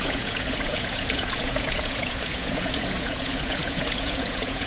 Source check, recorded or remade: remade